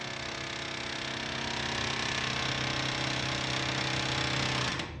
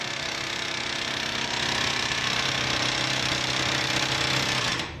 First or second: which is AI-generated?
second